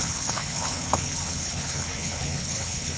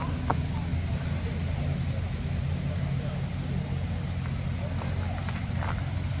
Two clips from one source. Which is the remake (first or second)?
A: first